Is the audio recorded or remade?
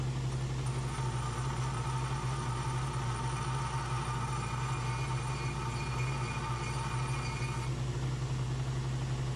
recorded